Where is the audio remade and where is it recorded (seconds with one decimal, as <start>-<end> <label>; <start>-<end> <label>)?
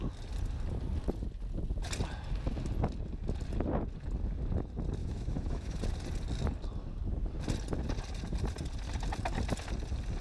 0.0-5.0 recorded; 5.0-5.8 remade; 5.8-10.2 recorded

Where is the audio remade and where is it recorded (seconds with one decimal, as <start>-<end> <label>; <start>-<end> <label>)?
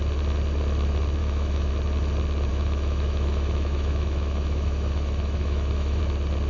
0.0-1.2 recorded; 1.2-1.7 remade; 1.7-2.5 recorded; 2.5-6.0 remade; 6.0-6.5 recorded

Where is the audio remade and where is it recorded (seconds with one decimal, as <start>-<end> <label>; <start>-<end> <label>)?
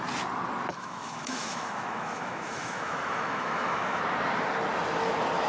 0.0-0.7 recorded; 0.7-4.0 remade; 4.0-5.5 recorded